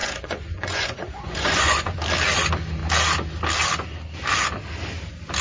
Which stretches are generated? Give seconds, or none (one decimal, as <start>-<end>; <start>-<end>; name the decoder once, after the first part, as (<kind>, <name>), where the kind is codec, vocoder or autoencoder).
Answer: 0.0-2.0 (vocoder, Vocos)